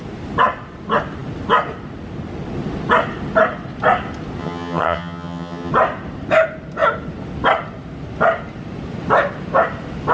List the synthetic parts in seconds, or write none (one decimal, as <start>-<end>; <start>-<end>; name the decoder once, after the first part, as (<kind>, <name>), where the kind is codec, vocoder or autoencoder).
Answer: 4.4-5.7 (vocoder, HiFi-GAN)